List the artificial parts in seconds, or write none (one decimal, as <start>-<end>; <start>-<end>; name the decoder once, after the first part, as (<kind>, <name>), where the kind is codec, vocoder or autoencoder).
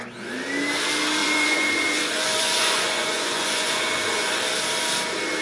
1.2-4.4 (vocoder, Vocos)